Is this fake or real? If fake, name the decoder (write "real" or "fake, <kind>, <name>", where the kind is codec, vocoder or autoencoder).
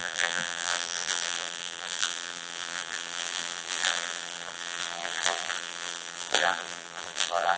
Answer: fake, vocoder, BigVGAN v2